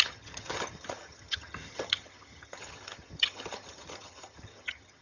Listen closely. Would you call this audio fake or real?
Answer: fake